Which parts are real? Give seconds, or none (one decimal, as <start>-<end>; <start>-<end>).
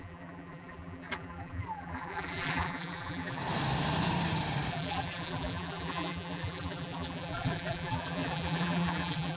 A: 3.4-4.7